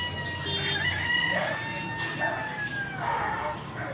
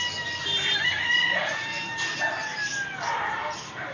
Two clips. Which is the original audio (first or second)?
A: first